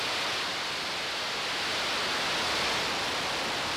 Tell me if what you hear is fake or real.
real